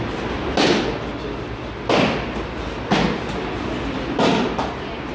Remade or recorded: recorded